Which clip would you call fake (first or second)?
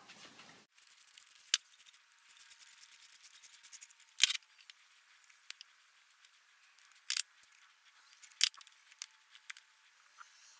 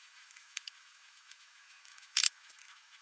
second